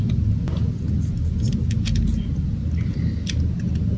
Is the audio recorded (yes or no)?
yes